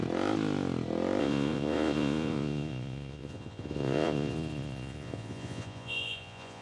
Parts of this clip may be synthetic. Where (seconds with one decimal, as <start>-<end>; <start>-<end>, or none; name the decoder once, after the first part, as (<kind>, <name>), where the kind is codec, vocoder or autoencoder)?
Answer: 1.2-6.6 (vocoder, Vocos)